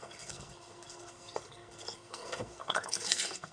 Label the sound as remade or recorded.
remade